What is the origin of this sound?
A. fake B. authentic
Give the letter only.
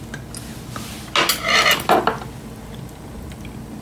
B